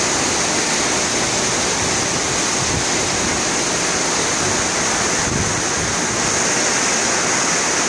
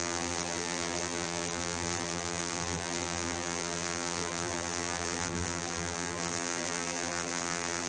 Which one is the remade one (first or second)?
second